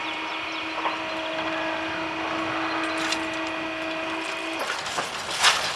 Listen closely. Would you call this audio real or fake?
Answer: real